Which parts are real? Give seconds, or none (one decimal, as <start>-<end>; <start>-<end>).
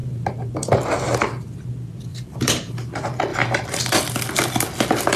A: 0.7-2.1; 2.9-3.3; 3.8-5.2